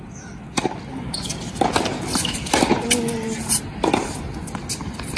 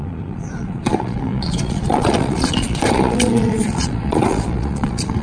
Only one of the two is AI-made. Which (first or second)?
second